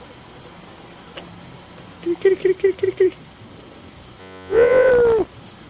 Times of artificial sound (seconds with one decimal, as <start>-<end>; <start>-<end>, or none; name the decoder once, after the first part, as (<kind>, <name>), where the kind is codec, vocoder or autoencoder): 4.2-4.9 (vocoder, Vocos)